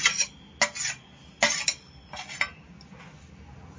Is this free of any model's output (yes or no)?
yes